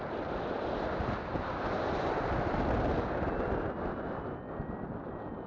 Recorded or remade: recorded